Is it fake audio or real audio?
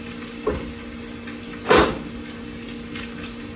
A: real